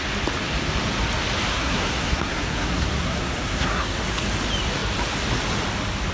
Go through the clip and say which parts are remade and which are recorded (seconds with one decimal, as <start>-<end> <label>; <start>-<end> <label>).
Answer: 0.0-1.5 recorded; 1.5-4.0 remade; 4.0-6.1 recorded